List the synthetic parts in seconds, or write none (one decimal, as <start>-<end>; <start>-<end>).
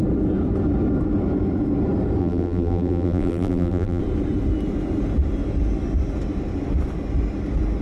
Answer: 2.2-4.0